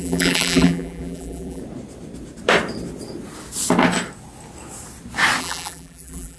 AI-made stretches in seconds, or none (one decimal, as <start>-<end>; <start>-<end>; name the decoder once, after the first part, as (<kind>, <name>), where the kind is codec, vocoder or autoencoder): 0.0-1.6 (vocoder, BigVGAN v2); 5.4-6.4